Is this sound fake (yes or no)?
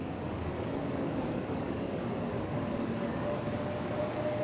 yes